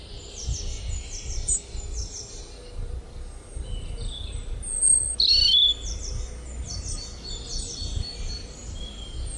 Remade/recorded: recorded